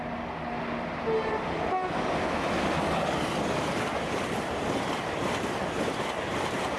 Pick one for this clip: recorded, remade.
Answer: recorded